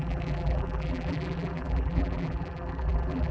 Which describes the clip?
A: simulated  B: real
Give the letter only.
A